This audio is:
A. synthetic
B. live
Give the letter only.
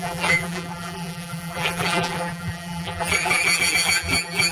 A